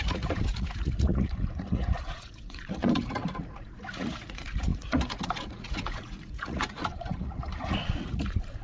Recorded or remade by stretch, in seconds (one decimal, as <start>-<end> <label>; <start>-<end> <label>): 0.0-8.6 remade